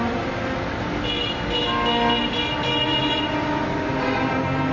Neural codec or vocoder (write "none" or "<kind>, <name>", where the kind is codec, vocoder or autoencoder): none